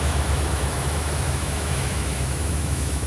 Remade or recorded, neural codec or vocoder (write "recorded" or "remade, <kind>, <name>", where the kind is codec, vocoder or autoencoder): remade, autoencoder, DAC-VAE